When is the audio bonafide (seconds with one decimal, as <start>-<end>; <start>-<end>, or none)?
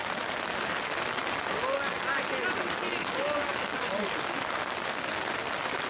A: 0.0-5.9